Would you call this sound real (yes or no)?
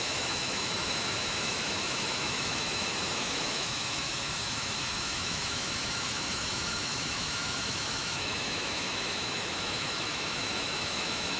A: no